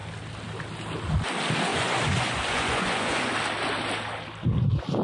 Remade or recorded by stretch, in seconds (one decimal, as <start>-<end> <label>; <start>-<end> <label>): 0.0-1.7 recorded; 1.7-3.3 remade; 3.3-5.0 recorded